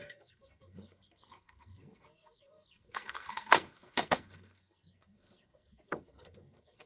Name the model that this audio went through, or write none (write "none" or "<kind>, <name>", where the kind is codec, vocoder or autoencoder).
codec, SNAC